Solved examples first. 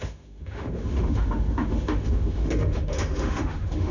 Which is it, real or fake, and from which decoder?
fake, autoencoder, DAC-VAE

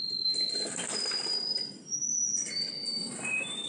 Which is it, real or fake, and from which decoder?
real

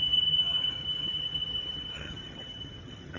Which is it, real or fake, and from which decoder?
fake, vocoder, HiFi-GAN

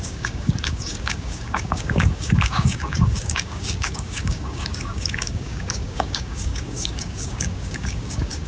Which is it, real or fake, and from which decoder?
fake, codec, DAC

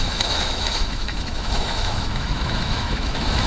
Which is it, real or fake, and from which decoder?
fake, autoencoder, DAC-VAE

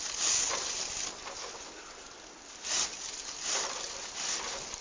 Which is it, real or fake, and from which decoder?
real